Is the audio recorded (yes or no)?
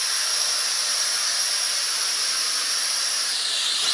no